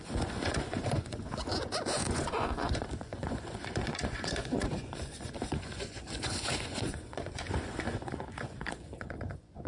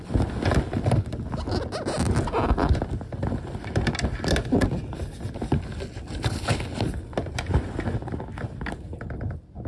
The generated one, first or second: first